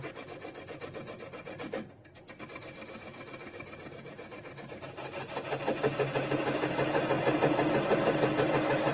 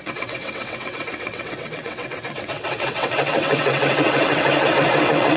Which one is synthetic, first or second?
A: second